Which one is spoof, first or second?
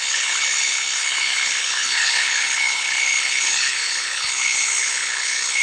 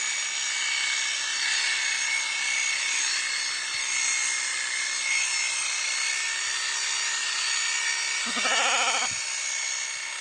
first